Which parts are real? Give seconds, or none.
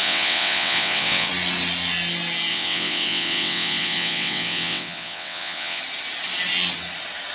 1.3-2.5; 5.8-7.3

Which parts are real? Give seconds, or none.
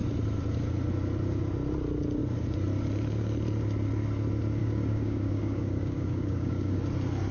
0.0-4.6; 6.8-7.3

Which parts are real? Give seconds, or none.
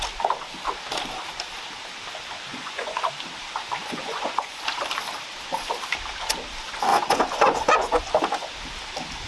0.0-2.5; 3.0-3.8; 4.6-6.9; 8.1-9.3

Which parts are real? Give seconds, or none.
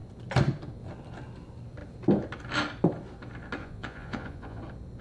0.0-3.6; 4.6-5.0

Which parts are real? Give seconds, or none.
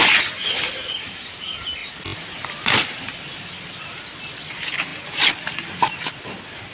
0.0-6.7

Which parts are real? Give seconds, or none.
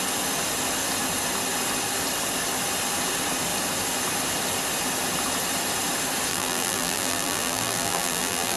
0.0-6.3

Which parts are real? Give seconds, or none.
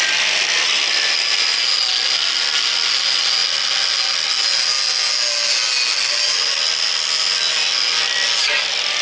0.0-9.0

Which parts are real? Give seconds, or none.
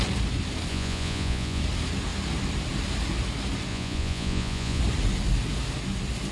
0.0-0.7; 1.6-3.7; 4.8-6.3